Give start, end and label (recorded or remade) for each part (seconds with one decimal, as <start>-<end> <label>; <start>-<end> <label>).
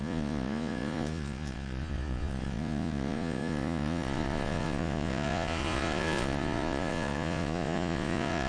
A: 0.0-8.5 remade